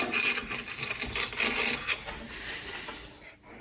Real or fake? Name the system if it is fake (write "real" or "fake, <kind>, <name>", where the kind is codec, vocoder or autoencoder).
real